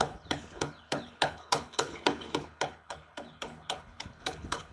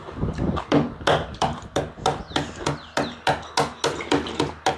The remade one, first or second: first